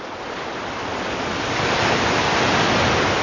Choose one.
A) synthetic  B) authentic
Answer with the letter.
B